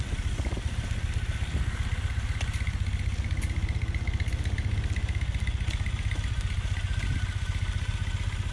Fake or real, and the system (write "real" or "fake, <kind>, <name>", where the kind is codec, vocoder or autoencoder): real